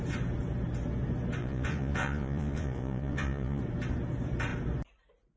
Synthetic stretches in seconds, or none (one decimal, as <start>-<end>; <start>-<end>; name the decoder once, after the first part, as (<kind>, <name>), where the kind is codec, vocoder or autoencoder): 1.4-3.6 (vocoder, Vocos)